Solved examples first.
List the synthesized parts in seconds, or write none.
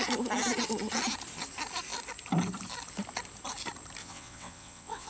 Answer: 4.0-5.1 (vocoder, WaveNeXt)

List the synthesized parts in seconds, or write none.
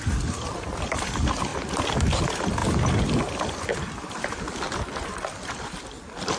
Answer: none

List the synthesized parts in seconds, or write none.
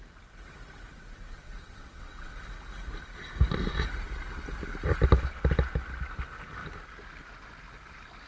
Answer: 0.9-2.3 (vocoder, WaveNeXt)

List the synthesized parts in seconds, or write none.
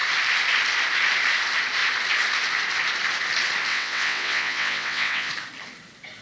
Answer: 3.7-5.3 (vocoder, WaveNeXt)